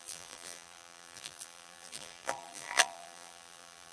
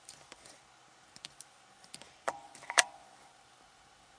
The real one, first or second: second